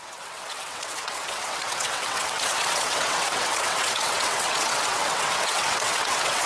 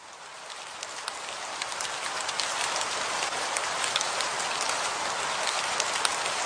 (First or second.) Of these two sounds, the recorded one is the second